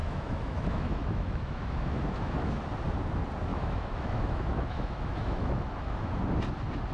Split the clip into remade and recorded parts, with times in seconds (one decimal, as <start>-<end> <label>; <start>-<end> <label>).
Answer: 0.0-2.6 remade; 2.6-3.5 recorded; 3.5-6.1 remade; 6.1-6.9 recorded